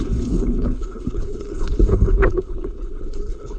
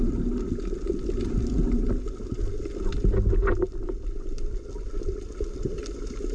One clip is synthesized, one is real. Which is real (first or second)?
second